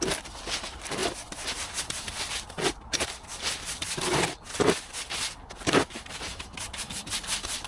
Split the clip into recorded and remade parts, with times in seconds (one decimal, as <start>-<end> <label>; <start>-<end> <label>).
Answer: 0.0-7.7 recorded